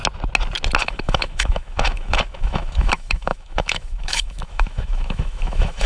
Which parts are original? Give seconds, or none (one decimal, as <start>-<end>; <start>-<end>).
0.0-0.8